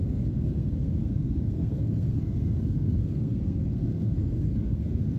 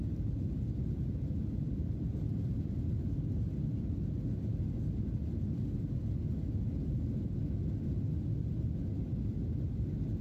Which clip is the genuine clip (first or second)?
second